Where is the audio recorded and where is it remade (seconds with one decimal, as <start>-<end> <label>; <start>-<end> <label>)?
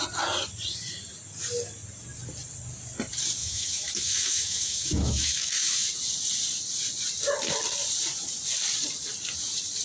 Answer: 0.0-3.4 recorded; 3.4-5.9 remade; 5.9-9.8 recorded